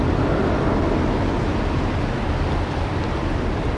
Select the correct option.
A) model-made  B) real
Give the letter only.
B